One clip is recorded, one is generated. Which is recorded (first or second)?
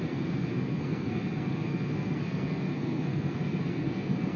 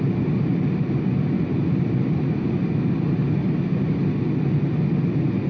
second